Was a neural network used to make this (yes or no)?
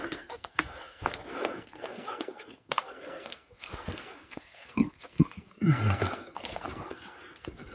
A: yes